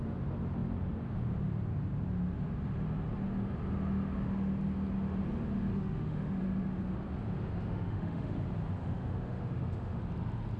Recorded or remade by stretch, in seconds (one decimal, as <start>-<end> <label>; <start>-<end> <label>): 0.0-5.7 recorded; 5.7-6.4 remade; 6.4-7.6 recorded; 7.6-8.3 remade; 8.3-8.8 recorded; 8.8-10.0 remade; 10.0-10.6 recorded